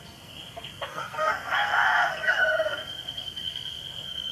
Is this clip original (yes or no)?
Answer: no